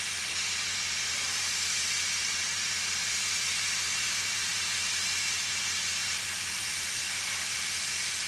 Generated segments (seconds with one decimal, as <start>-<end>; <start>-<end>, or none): 0.0-8.3